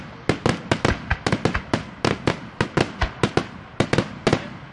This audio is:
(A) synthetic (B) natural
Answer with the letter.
B